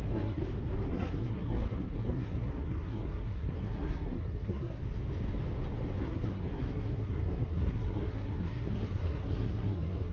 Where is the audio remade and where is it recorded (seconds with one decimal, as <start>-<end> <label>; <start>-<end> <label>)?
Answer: 0.0-0.4 remade; 0.4-0.9 recorded; 0.9-4.8 remade; 4.8-6.0 recorded; 6.0-10.1 remade